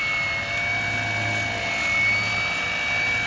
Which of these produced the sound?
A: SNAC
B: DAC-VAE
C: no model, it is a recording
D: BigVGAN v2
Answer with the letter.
C